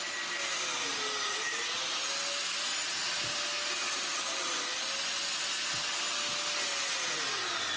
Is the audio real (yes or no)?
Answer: yes